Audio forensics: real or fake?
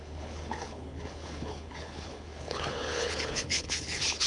fake